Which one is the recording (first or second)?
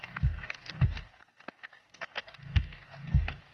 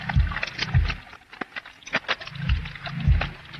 second